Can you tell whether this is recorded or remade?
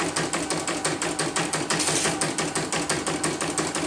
recorded